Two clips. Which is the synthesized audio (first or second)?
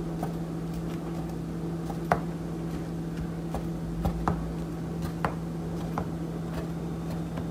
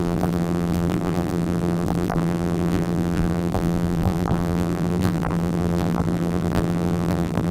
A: second